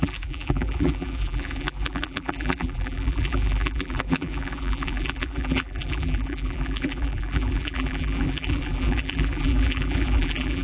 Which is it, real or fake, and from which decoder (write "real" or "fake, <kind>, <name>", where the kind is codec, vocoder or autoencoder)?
fake, vocoder, BigVGAN v2